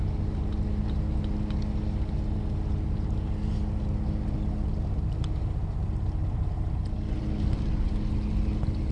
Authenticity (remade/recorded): recorded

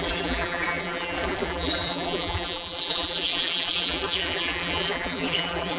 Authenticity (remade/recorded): remade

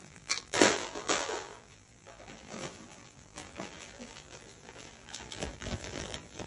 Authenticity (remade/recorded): remade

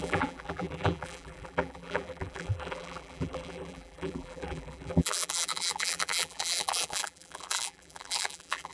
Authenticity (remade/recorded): remade